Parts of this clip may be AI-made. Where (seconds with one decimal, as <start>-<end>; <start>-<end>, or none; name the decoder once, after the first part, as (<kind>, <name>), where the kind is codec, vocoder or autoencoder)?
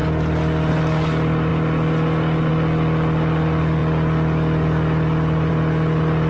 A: none